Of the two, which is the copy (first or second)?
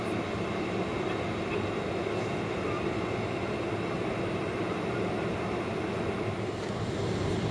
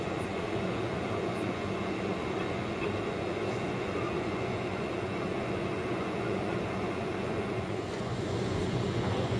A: second